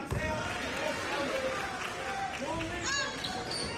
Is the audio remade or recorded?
recorded